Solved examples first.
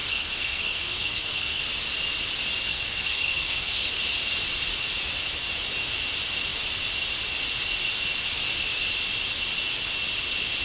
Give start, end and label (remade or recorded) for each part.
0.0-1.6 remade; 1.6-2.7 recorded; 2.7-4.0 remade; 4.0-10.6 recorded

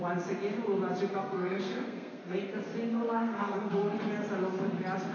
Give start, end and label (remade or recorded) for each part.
0.0-1.1 recorded; 1.1-2.4 remade; 2.4-2.9 recorded; 2.9-4.0 remade; 4.0-5.1 recorded

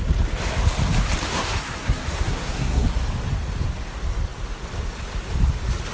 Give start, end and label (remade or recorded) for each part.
0.0-1.3 recorded; 1.3-3.0 remade; 3.0-5.9 recorded

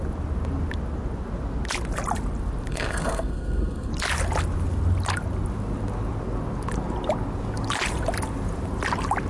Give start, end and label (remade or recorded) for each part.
0.0-2.7 recorded; 2.7-3.9 remade; 3.9-9.3 recorded

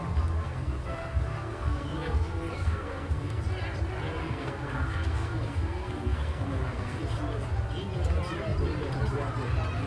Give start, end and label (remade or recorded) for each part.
0.0-0.4 recorded; 0.4-3.4 remade; 3.4-4.2 recorded; 4.2-7.0 remade; 7.0-9.9 recorded